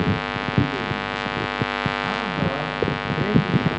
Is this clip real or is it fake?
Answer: real